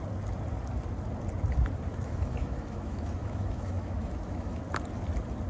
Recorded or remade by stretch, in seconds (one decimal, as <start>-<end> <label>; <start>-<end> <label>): 0.0-1.9 recorded; 1.9-4.6 remade; 4.6-5.5 recorded

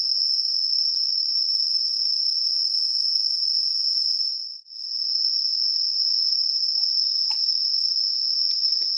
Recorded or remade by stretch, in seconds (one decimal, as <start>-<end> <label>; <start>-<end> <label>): 0.0-0.6 recorded; 0.6-2.5 remade; 2.5-9.0 recorded

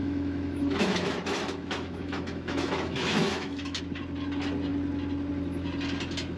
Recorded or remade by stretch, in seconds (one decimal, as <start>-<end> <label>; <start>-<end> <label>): 0.0-3.8 remade; 3.8-6.4 recorded